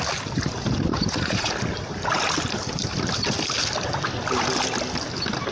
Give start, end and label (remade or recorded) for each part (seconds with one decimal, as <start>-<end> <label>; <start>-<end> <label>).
0.0-0.9 recorded; 0.9-1.5 remade; 1.5-5.5 recorded